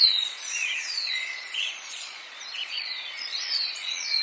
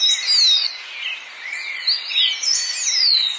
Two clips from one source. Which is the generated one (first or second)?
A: first